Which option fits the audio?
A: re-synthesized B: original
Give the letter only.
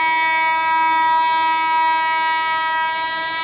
B